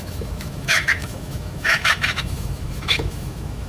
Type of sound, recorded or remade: remade